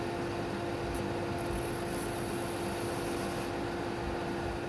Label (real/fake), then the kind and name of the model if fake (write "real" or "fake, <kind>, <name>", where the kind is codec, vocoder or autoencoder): real